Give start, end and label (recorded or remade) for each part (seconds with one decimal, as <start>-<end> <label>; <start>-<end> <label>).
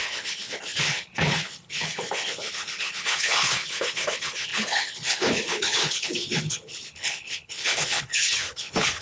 0.0-9.0 remade